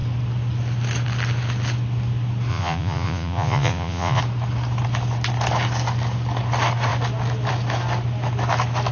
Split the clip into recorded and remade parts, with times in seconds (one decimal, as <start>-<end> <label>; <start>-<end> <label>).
0.0-2.5 recorded; 2.5-4.2 remade; 4.2-8.9 recorded